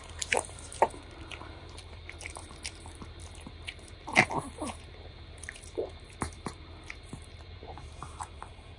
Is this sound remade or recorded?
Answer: remade